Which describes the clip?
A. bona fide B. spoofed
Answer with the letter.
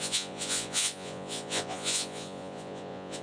B